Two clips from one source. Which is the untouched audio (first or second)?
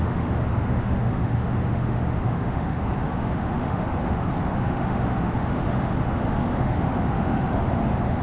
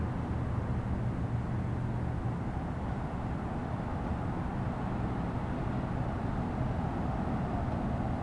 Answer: second